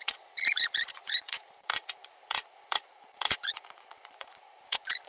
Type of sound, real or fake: fake